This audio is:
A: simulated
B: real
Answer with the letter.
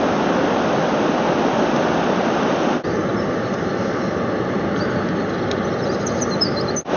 B